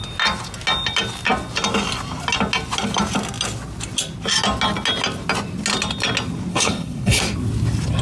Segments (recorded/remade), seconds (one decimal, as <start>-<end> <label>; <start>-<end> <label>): 0.0-6.5 recorded; 6.5-7.2 remade; 7.2-8.0 recorded